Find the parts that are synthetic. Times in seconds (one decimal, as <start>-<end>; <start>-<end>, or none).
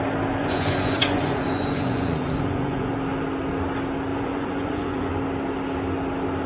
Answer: 0.4-2.9; 4.1-5.1